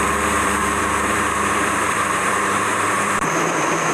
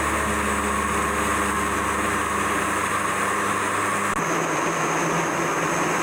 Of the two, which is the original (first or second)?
second